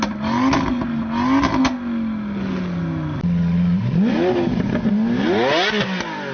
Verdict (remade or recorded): recorded